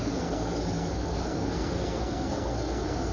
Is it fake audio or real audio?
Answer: fake